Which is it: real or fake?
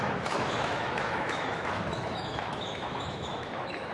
fake